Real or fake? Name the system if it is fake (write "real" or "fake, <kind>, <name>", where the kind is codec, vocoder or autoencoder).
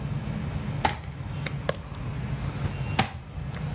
real